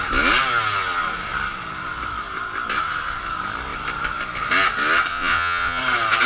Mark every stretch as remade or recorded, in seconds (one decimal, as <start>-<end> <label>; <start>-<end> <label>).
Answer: 0.0-5.1 recorded; 5.1-5.8 remade; 5.8-6.3 recorded